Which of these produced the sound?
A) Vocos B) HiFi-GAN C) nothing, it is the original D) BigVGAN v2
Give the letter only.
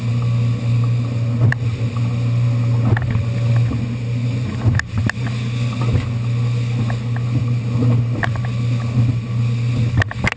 C